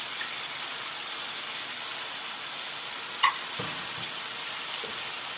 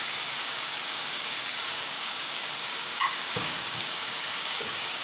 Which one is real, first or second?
first